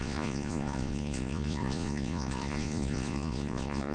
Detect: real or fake fake